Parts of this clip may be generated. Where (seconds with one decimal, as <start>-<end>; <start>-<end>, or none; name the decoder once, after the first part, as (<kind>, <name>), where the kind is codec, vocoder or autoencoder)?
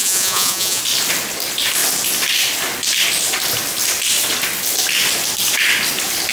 0.0-0.8 (vocoder, Vocos)